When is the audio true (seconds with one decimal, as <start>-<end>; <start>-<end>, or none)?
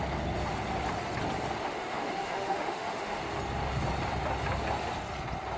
0.0-1.6; 3.2-5.6